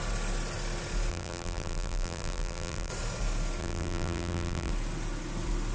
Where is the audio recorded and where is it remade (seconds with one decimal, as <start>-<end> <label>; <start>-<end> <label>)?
0.0-1.1 recorded; 1.1-2.9 remade; 2.9-3.6 recorded; 3.6-4.7 remade; 4.7-5.7 recorded